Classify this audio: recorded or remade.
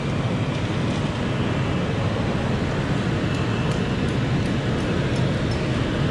recorded